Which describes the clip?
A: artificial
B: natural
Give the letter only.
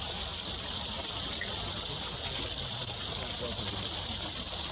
B